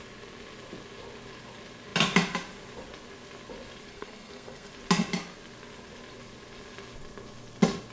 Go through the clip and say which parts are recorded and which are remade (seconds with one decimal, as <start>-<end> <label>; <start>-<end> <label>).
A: 0.0-3.9 recorded; 3.9-4.7 remade; 4.7-7.9 recorded